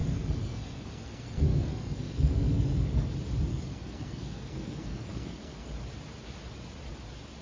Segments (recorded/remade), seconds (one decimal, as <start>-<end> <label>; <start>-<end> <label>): 0.0-3.1 remade; 3.1-3.5 recorded; 3.5-5.7 remade; 5.7-7.4 recorded